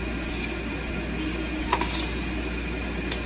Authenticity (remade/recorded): recorded